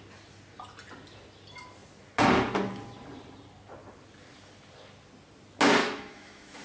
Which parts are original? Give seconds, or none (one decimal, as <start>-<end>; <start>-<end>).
0.0-5.8